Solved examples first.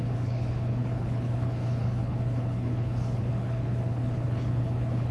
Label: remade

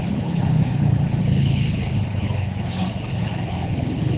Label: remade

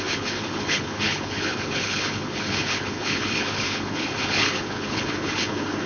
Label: remade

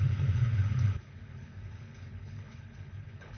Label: remade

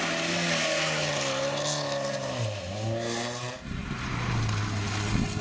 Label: recorded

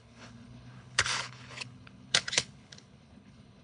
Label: remade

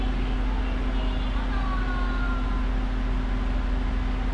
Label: recorded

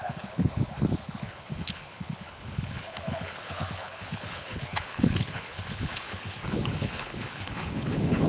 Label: remade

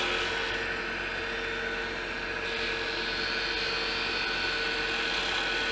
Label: recorded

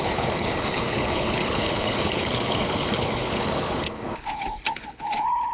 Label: remade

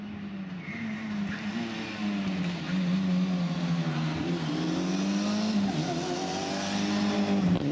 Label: recorded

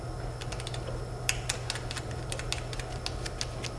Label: recorded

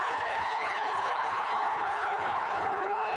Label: remade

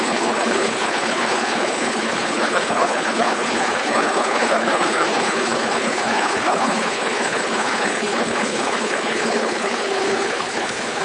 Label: remade